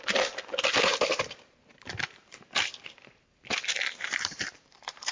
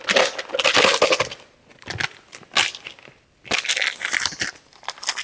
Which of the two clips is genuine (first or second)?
second